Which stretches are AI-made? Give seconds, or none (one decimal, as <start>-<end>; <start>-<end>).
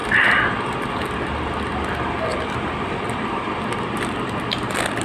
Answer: 0.0-0.5; 2.3-4.4